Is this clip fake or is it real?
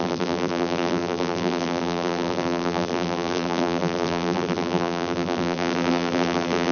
fake